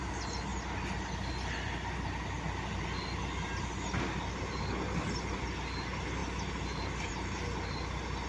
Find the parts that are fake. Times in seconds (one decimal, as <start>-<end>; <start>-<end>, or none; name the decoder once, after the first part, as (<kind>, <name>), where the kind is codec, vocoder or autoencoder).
none